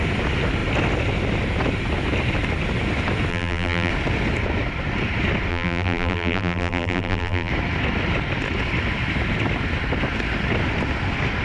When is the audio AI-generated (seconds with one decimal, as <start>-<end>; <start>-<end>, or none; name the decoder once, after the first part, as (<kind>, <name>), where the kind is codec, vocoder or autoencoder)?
3.3-3.9 (vocoder, BigVGAN v2); 5.5-7.5